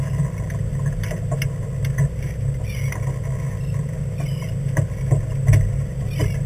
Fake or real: real